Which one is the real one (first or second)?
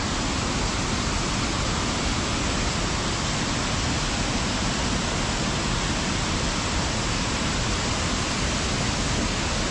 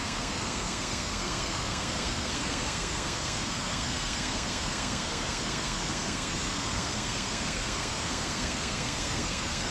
first